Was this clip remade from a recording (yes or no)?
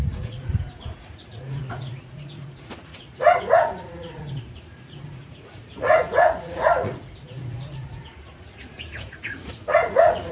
yes